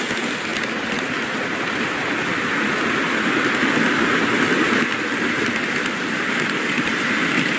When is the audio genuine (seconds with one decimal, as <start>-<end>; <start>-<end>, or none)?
0.0-7.6